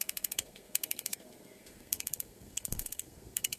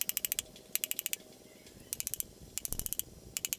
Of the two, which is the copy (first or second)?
first